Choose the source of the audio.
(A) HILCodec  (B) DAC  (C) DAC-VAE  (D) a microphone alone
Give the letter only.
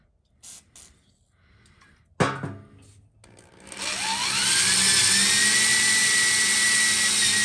D